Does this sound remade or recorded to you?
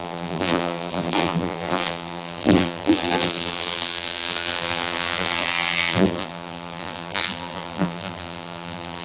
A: remade